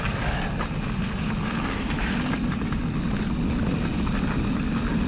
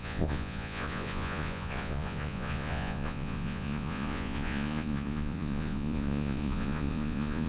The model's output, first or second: second